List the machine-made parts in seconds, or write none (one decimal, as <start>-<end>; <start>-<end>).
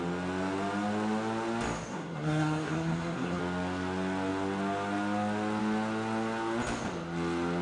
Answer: 1.9-3.4